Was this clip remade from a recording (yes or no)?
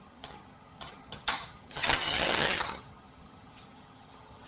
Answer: yes